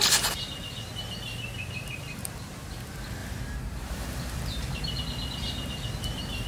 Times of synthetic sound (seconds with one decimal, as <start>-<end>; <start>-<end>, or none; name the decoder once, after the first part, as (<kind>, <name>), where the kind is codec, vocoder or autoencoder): 3.2-4.4 (vocoder, BigVGAN v2)